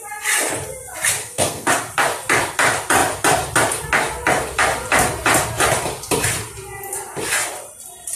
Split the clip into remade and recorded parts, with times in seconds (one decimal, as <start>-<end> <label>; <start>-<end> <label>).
0.0-1.2 recorded; 1.2-1.7 remade; 1.7-8.2 recorded